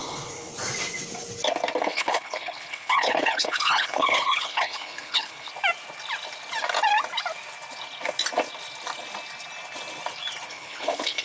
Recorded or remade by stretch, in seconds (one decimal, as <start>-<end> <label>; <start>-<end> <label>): 0.0-0.5 remade; 0.5-1.8 recorded; 1.8-5.5 remade; 5.5-10.5 recorded; 10.5-11.2 remade